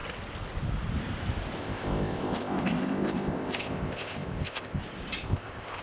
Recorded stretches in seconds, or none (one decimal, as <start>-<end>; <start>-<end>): 0.0-1.6; 4.8-5.2